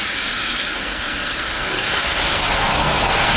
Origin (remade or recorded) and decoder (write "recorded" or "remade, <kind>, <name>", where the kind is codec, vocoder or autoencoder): remade, codec, SNAC